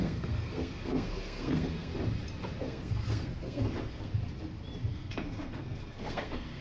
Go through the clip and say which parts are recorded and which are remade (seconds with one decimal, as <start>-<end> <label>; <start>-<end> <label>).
0.0-1.9 remade; 1.9-2.6 recorded; 2.6-4.1 remade; 4.1-4.9 recorded; 4.9-6.6 remade